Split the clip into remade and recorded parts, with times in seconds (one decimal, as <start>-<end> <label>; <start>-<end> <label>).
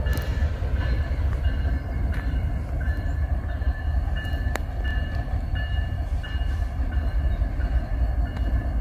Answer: 0.0-0.4 recorded; 0.4-3.8 remade; 3.8-4.9 recorded; 4.9-7.8 remade; 7.8-8.8 recorded